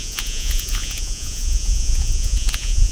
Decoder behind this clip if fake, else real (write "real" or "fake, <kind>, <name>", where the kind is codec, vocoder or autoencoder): fake, vocoder, Vocos